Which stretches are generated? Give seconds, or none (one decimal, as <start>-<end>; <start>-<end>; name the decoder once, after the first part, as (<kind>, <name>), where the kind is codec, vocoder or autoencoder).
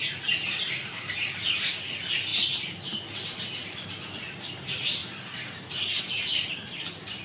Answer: 2.3-4.0 (vocoder, BigVGAN v2); 5.0-6.0